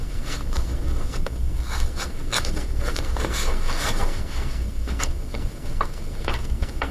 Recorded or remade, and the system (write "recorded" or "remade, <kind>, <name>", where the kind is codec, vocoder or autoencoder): remade, codec, SNAC